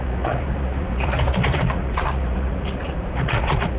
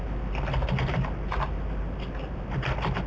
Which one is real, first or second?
second